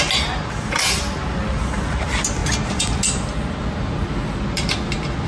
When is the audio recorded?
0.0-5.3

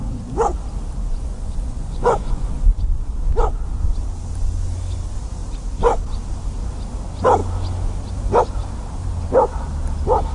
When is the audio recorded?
0.0-1.1; 2.5-10.3

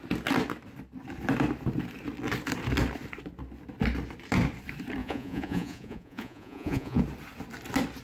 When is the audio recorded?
0.0-5.0; 7.0-8.0

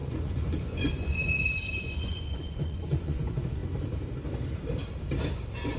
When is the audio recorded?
3.2-5.8